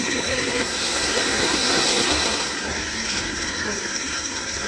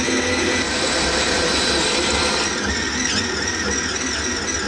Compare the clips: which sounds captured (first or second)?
second